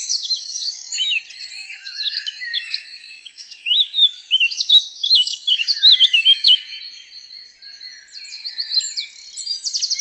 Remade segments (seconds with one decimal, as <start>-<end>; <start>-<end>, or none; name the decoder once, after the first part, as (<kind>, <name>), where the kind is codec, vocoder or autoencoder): 0.0-1.2 (codec, DAC); 1.6-6.8; 8.3-8.8